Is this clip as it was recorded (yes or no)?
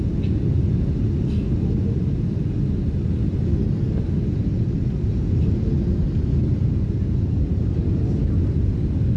yes